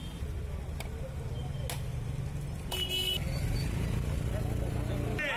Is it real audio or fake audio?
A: real